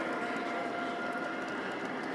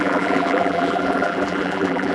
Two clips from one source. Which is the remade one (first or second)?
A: second